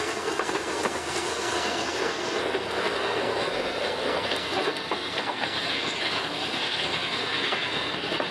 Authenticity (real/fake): fake